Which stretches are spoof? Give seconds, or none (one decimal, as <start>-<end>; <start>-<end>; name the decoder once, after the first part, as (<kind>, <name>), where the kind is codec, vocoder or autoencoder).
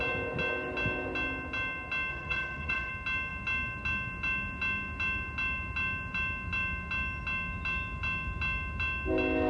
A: 2.1-2.9 (vocoder, WaveNeXt)